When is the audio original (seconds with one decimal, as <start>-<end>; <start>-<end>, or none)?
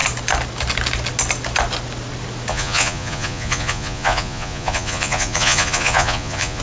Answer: 0.0-2.5